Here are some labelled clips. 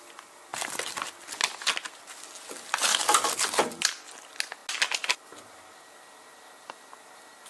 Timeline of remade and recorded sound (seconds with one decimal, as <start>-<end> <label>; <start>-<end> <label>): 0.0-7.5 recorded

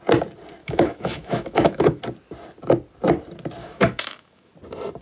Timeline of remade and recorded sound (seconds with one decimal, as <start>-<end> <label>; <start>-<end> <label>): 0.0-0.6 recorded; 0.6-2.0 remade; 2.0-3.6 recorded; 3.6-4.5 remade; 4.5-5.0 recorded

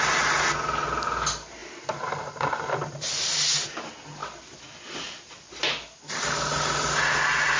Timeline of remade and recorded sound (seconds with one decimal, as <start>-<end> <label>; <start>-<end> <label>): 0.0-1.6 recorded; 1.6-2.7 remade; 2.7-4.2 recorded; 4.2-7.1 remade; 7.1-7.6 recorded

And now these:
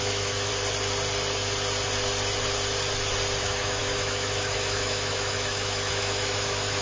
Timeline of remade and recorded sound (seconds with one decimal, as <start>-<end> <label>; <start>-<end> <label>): 0.0-0.5 remade; 0.5-3.4 recorded; 3.4-6.8 remade